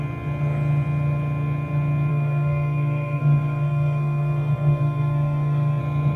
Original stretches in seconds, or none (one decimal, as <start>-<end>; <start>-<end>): 0.0-2.1; 5.8-6.2